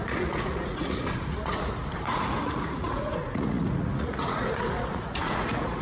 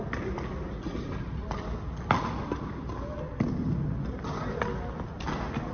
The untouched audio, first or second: second